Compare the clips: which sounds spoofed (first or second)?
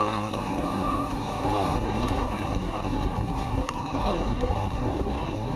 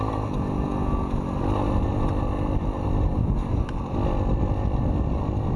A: first